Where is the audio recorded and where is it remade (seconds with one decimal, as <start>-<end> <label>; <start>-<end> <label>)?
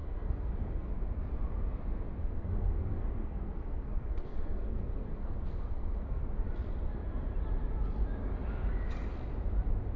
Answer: 0.0-0.9 remade; 0.9-2.2 recorded; 2.2-6.2 remade; 6.2-10.0 recorded